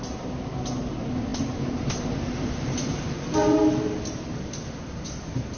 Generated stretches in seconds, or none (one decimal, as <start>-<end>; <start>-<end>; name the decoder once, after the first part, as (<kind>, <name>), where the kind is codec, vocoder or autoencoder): none